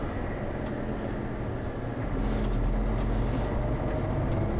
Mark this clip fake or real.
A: real